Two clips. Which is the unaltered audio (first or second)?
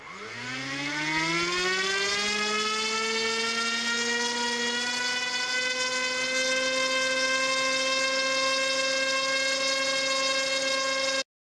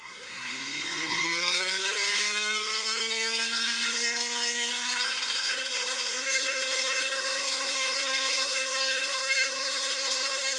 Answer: first